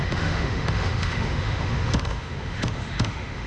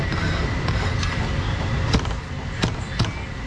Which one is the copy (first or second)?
first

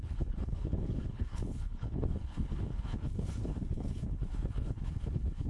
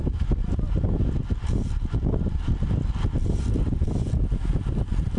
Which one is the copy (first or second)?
first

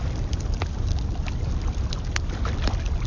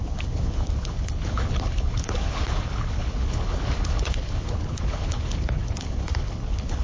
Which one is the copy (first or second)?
second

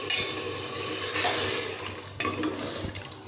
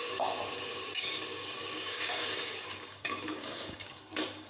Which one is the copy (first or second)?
second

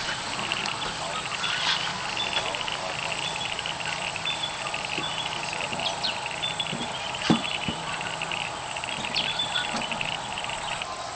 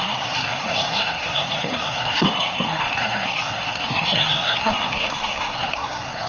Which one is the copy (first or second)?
second